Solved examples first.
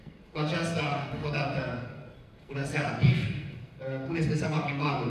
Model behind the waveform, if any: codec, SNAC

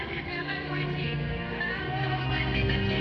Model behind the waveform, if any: codec, SNAC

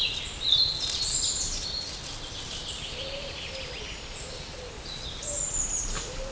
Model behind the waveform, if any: none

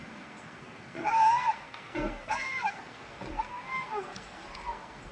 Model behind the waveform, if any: codec, SNAC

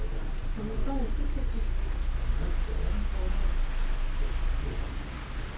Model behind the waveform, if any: none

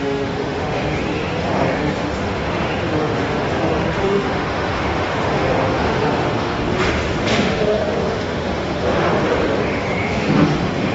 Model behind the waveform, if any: autoencoder, DAC-VAE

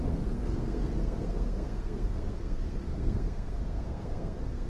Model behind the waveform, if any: codec, SNAC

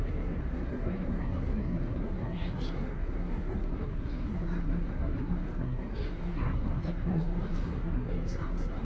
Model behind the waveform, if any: codec, SNAC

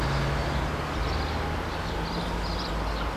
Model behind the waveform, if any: none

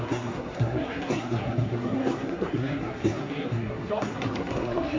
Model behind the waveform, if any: codec, SNAC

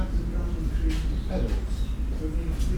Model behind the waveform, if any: none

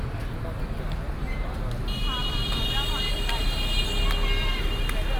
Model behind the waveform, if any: none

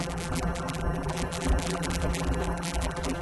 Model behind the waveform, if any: vocoder, BigVGAN v2